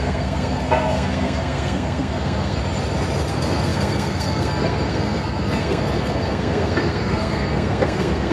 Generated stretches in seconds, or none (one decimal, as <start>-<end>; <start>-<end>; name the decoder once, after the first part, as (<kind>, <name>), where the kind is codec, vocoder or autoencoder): 0.0-2.6 (codec, SNAC); 3.3-8.3